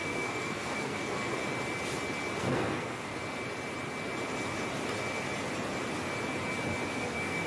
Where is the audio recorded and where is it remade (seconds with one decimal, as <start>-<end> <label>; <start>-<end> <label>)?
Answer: 0.0-1.4 remade; 1.4-2.4 recorded; 2.4-3.1 remade; 3.1-6.9 recorded; 6.9-7.5 remade